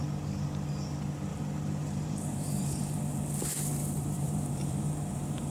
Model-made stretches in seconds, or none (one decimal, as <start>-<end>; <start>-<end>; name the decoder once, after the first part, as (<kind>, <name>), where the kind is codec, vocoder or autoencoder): 1.3-3.0 (vocoder, BigVGAN v2); 3.8-5.5